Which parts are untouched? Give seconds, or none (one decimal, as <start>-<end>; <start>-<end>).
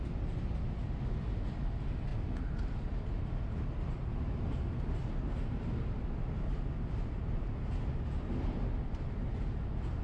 0.0-10.0